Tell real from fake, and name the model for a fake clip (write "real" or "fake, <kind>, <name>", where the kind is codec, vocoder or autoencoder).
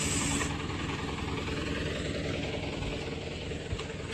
real